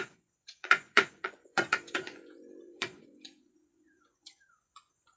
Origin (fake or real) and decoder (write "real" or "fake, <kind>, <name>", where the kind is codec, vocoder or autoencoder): fake, vocoder, Vocos